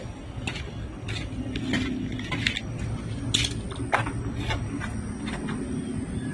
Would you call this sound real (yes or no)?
yes